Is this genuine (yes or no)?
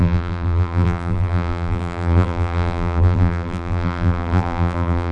no